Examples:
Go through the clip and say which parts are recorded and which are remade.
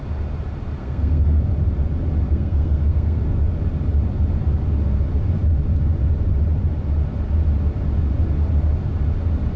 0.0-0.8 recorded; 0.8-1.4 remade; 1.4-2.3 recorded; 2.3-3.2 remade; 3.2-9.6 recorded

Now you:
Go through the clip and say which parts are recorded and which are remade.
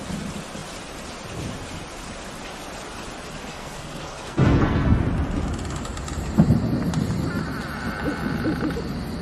0.0-3.5 recorded; 3.5-5.0 remade; 5.0-9.2 recorded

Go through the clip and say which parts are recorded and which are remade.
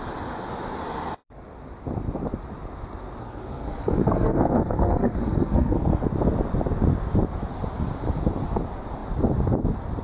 0.0-3.2 recorded; 3.2-6.0 remade; 6.0-10.0 recorded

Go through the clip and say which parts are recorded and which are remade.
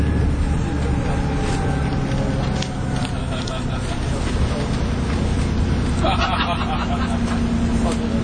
0.0-8.2 recorded